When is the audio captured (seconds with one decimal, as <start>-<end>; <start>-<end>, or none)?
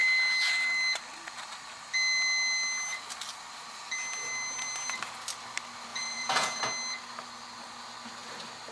0.0-5.9; 6.6-8.7